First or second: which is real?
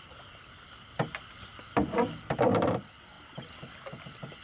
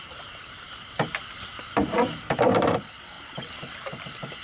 first